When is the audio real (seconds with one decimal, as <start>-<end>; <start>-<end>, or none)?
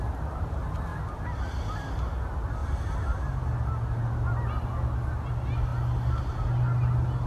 0.0-7.3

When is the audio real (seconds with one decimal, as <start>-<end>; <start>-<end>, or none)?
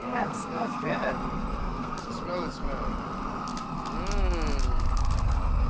1.1-1.6; 2.1-5.7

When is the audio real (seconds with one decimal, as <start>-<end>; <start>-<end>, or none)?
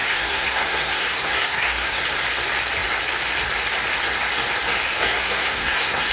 2.0-4.9